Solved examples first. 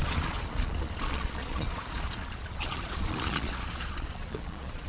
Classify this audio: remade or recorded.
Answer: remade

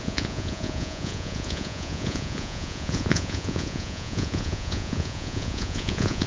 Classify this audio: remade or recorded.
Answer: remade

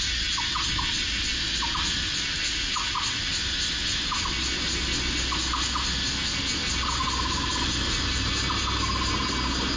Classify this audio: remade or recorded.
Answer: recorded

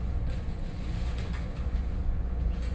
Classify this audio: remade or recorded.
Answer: remade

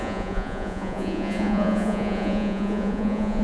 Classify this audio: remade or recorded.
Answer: remade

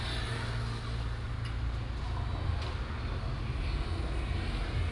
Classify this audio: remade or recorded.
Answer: recorded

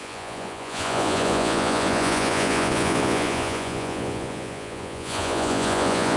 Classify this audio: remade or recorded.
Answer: remade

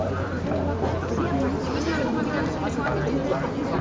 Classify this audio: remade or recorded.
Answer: recorded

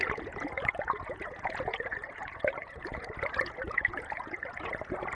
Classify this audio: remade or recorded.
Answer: remade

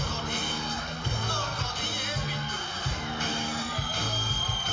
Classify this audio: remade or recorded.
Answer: recorded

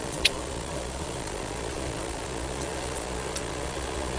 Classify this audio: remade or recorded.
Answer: remade